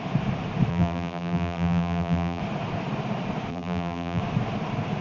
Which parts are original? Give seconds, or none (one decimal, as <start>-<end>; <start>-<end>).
0.0-0.7; 2.4-3.5; 4.2-5.0